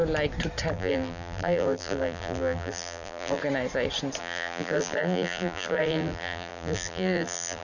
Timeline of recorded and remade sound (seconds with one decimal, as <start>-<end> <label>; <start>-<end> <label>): 0.0-0.7 recorded; 0.7-3.4 remade; 3.4-4.2 recorded; 4.2-7.6 remade